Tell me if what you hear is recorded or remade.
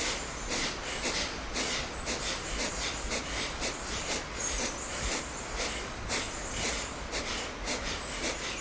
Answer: recorded